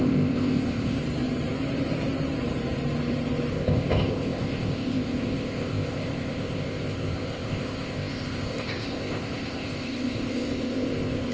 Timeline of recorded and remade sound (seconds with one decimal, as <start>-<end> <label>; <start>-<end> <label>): 0.0-1.0 remade; 1.0-3.5 recorded; 3.5-11.3 remade